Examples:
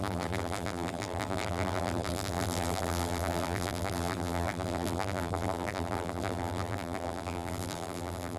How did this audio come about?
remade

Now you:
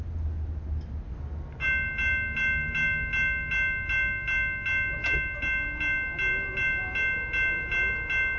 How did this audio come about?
recorded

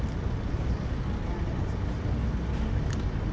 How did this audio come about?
recorded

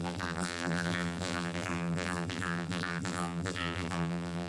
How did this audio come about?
remade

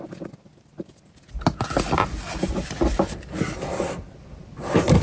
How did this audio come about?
recorded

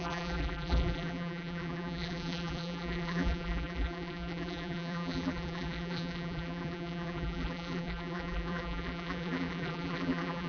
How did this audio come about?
remade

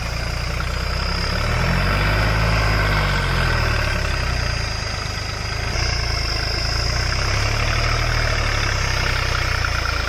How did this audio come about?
recorded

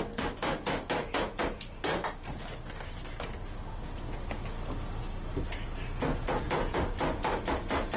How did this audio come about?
recorded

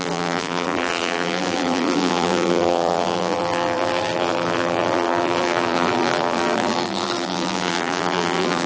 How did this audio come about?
remade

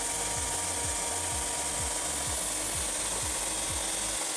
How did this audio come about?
recorded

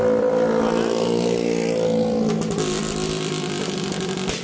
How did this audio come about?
recorded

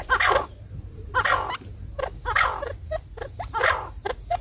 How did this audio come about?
remade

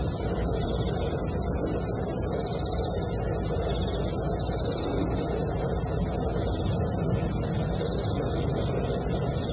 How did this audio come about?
recorded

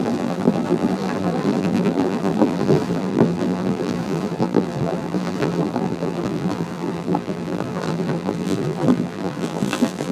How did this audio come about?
remade